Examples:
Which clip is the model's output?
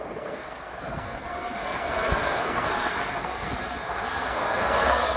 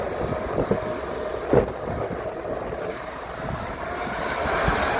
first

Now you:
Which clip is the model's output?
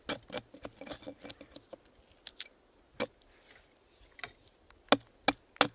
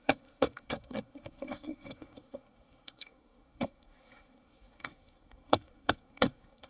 second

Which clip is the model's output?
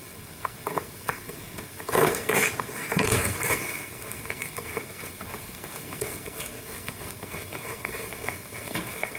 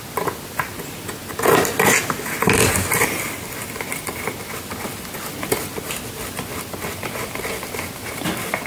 first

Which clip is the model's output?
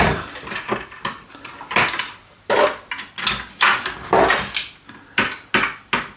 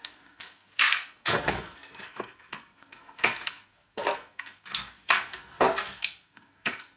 second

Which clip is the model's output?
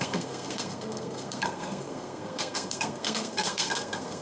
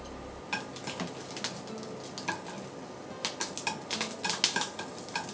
first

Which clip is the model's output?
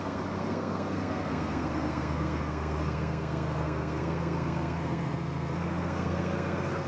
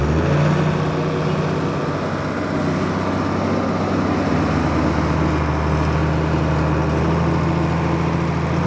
first